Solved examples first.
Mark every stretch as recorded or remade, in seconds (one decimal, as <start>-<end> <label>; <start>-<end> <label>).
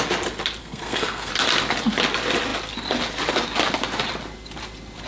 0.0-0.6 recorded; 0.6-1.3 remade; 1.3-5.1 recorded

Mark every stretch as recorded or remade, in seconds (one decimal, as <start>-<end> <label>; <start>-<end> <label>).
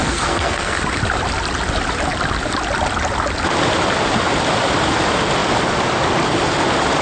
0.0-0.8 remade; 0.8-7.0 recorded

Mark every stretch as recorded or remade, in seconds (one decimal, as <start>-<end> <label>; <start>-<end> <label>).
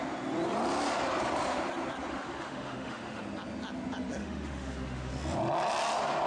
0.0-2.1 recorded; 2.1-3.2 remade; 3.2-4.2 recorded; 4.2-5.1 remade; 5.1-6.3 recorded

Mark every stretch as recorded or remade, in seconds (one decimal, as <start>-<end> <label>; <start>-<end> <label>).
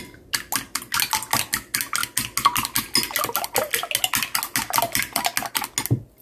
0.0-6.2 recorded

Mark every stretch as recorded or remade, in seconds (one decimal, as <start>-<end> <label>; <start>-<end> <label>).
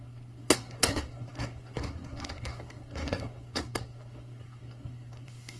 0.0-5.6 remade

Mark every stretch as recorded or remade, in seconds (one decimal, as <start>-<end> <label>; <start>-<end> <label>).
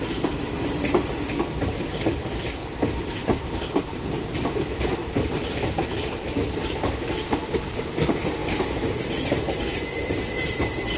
0.0-2.6 recorded; 2.6-4.0 remade; 4.0-5.0 recorded; 5.0-6.1 remade; 6.1-11.0 recorded